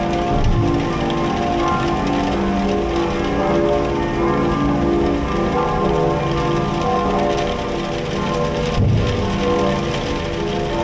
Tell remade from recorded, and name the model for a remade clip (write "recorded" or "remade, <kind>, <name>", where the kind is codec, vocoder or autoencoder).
recorded